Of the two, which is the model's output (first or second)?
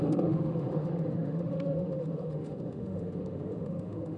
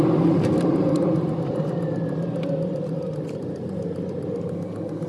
first